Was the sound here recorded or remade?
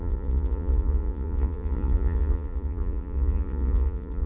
remade